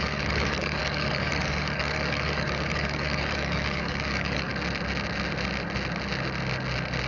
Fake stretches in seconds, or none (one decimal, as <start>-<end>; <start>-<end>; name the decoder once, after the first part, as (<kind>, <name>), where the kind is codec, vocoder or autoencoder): 0.0-4.5 (codec, DAC)